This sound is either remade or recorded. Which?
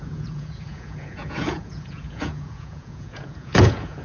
remade